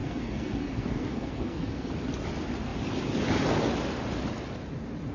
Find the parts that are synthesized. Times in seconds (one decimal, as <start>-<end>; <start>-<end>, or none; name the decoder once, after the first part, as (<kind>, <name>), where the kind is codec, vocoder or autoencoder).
0.0-1.9 (codec, SNAC)